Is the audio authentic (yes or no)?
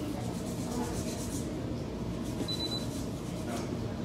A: yes